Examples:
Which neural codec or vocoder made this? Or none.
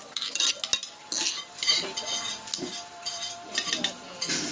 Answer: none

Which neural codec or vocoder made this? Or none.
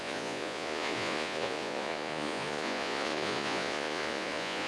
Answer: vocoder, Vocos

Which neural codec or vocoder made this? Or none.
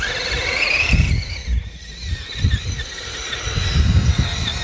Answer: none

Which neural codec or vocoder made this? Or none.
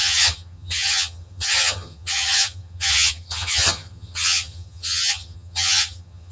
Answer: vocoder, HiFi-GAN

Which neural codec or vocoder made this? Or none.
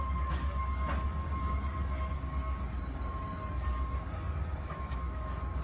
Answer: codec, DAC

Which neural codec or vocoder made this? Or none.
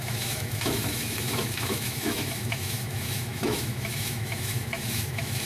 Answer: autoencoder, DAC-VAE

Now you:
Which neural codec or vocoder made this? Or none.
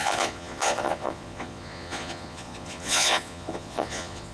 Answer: vocoder, Vocos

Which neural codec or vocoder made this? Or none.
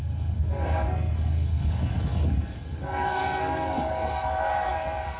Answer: codec, SNAC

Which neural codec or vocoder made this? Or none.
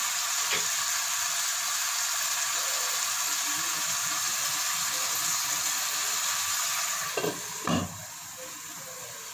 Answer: none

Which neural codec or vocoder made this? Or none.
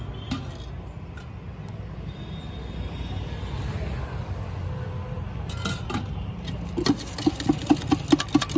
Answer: none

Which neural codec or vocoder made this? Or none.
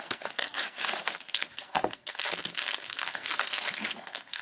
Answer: codec, SNAC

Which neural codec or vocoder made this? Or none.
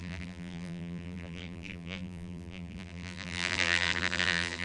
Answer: vocoder, BigVGAN v2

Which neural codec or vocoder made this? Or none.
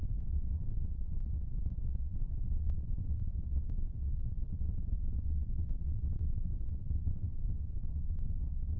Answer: vocoder, WaveNeXt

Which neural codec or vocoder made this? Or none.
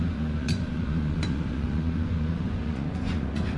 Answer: vocoder, Vocos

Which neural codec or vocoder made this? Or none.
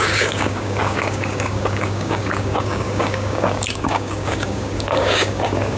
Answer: codec, DAC